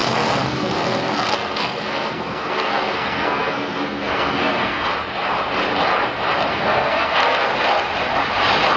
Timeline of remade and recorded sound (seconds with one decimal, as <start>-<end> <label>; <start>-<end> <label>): 0.0-4.9 remade; 4.9-6.5 recorded; 6.5-7.5 remade; 7.5-8.8 recorded